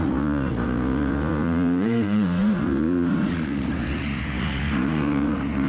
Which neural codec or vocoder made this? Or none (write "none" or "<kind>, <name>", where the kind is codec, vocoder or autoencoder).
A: vocoder, Vocos